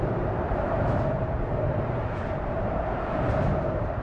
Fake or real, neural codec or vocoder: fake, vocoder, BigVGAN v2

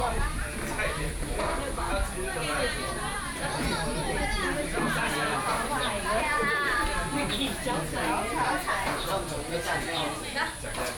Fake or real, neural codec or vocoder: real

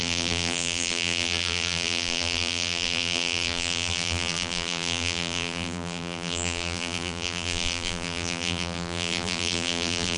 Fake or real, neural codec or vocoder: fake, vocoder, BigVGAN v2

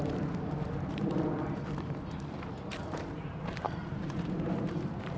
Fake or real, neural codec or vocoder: fake, vocoder, BigVGAN v2